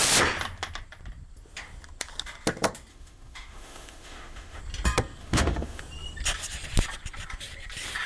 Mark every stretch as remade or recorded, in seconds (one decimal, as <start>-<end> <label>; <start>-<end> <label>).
0.0-2.9 recorded; 2.9-4.6 remade; 4.6-5.2 recorded; 5.2-5.8 remade; 5.8-8.1 recorded